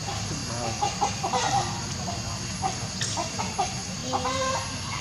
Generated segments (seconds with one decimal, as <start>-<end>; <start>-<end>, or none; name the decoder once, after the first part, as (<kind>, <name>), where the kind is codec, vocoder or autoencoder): none